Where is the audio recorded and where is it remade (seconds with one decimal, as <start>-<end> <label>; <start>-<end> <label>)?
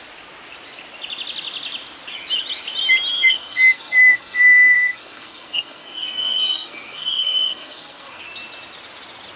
0.0-3.1 recorded; 3.1-8.2 remade; 8.2-9.4 recorded